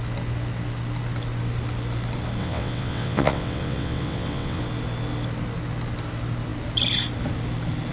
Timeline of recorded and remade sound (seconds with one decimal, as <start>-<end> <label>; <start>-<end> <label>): 0.0-2.4 recorded; 2.4-4.6 remade; 4.6-7.9 recorded